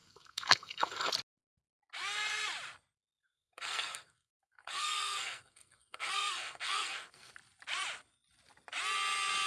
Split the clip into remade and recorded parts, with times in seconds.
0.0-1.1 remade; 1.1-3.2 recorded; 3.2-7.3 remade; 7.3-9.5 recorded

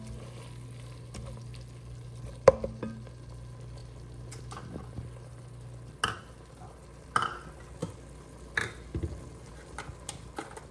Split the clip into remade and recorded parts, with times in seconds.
0.0-10.7 recorded

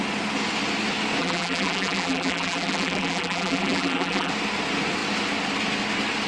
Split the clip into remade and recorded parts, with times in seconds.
0.0-1.2 recorded; 1.2-4.3 remade; 4.3-6.3 recorded

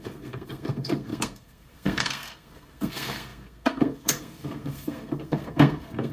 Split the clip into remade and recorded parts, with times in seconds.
0.0-6.1 remade

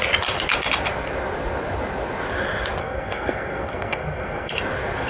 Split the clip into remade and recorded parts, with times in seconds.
0.0-2.8 recorded; 2.8-4.5 remade; 4.5-5.1 recorded

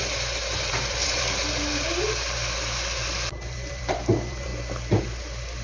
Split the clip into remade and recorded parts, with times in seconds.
0.0-4.5 remade; 4.5-5.0 recorded; 5.0-5.6 remade